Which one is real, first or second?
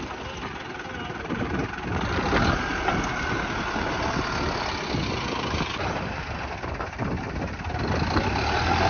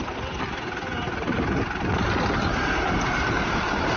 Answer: first